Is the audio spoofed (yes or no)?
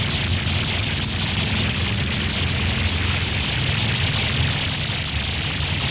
no